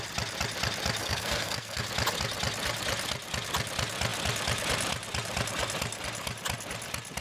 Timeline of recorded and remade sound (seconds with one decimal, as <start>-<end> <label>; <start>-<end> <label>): 0.0-1.0 recorded; 1.0-1.8 remade; 1.8-7.2 recorded